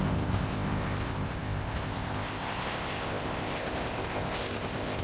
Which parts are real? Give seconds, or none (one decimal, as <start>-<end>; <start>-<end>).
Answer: none